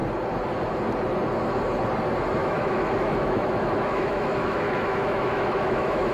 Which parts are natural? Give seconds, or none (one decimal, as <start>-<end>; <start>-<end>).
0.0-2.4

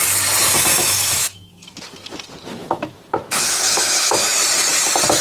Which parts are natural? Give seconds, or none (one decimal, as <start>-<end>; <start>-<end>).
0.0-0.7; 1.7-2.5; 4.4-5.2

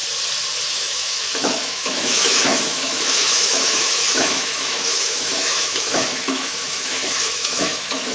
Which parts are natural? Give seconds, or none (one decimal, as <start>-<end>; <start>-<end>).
0.0-0.7

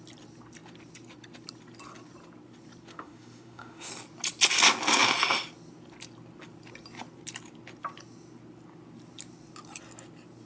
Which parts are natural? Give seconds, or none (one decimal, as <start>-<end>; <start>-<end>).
0.0-2.9; 3.9-10.5

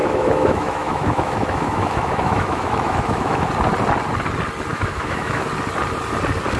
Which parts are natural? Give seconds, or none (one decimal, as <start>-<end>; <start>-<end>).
3.5-4.7; 5.4-6.6

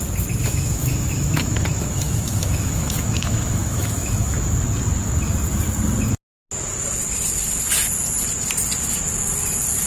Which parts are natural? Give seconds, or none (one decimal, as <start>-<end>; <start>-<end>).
0.0-0.4; 4.5-9.9

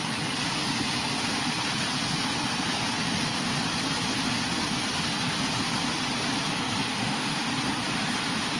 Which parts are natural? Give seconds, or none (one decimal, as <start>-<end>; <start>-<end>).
0.0-6.9; 7.5-8.6

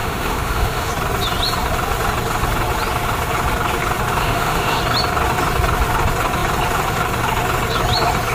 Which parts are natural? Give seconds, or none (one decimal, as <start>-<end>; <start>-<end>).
0.9-4.2; 4.8-8.3